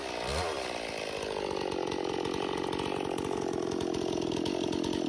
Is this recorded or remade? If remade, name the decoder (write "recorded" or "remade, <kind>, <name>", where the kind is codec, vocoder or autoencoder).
recorded